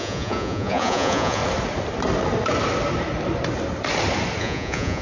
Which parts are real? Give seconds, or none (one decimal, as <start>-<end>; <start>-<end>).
1.4-4.4